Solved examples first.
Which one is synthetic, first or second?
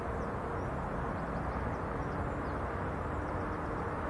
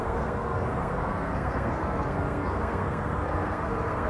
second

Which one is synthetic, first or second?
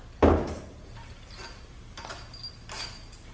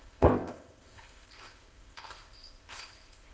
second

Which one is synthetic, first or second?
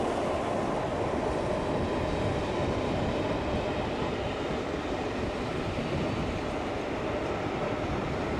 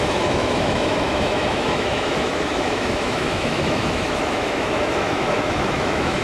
second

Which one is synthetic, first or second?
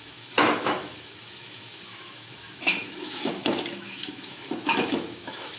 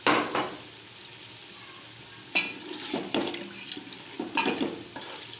first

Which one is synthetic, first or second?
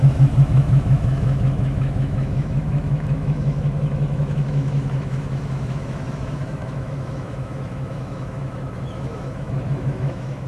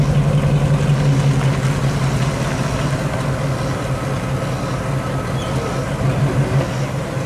first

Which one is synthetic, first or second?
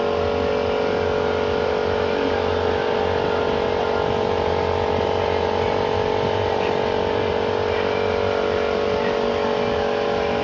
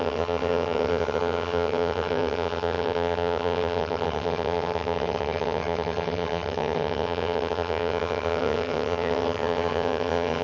second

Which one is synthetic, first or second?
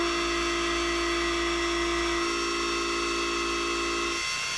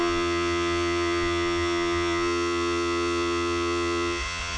second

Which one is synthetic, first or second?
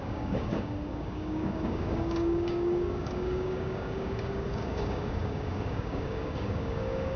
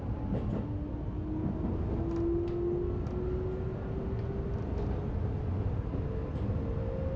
first